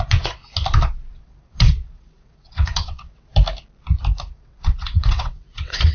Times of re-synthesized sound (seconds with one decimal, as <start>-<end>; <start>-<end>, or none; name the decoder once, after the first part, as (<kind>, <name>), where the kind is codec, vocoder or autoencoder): 0.0-0.4 (vocoder, WaveNeXt); 1.1-3.3; 4.2-5.9

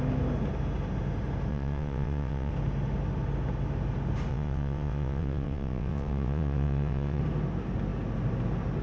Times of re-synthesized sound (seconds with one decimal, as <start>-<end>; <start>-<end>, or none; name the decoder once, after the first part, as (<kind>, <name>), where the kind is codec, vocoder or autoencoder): 1.5-2.5 (vocoder, WaveNeXt); 4.3-7.2